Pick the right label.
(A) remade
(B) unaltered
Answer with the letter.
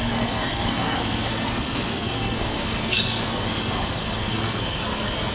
A